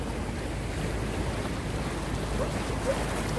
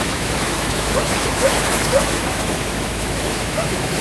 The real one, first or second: first